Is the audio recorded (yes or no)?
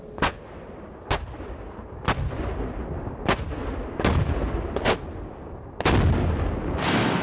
yes